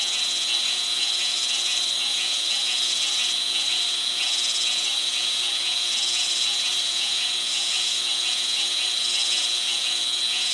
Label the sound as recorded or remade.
remade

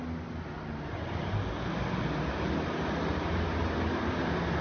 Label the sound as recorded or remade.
recorded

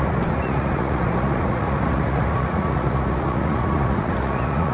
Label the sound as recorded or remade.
remade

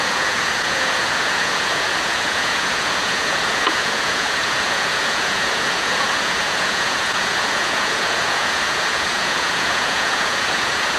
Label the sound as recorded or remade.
remade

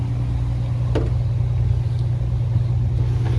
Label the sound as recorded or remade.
recorded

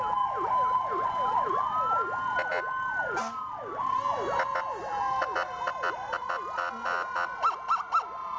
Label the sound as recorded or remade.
recorded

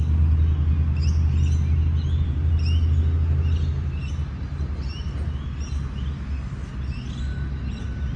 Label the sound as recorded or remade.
recorded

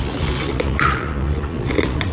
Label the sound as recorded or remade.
remade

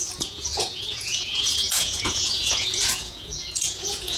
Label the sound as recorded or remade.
remade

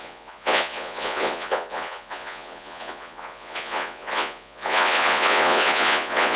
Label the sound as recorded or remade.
remade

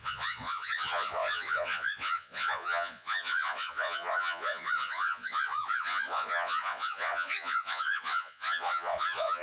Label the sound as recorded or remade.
remade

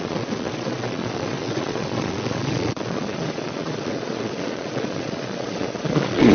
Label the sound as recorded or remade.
remade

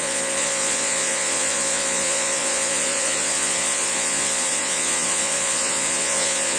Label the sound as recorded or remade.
remade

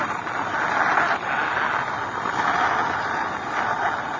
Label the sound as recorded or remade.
recorded